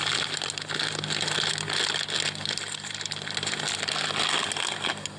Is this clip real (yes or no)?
yes